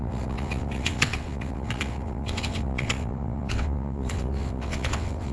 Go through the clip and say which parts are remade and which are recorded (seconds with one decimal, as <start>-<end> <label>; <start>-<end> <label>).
0.0-5.3 remade